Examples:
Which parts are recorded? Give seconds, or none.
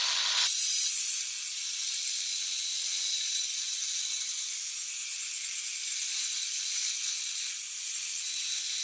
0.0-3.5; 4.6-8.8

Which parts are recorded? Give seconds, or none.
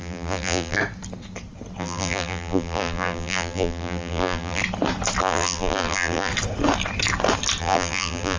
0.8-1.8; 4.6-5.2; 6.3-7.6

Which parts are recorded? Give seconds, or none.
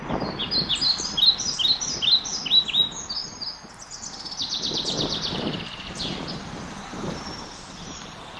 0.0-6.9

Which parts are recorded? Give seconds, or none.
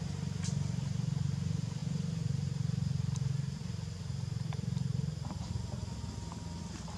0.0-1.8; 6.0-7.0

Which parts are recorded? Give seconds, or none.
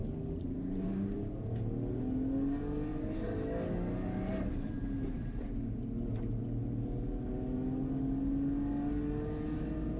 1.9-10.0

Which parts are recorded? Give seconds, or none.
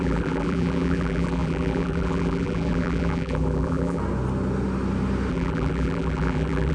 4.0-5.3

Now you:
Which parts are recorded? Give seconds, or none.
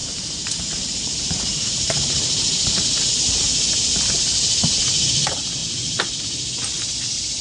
2.8-7.4